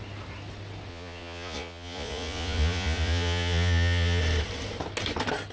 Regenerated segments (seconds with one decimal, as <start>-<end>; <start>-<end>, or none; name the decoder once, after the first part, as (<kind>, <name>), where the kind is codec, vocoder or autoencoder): 0.9-4.2 (vocoder, Vocos)